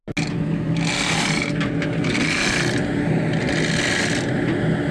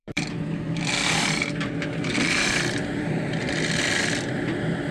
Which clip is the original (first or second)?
first